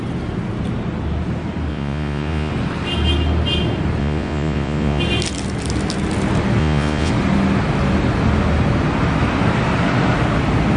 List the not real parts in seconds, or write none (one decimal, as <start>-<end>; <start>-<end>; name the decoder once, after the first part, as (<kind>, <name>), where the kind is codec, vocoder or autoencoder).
1.7-2.5 (vocoder, Vocos); 4.0-5.0; 6.6-7.1